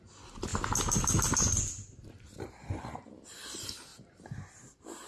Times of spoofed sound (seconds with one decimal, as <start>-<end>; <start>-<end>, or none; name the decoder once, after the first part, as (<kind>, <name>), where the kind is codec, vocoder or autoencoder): none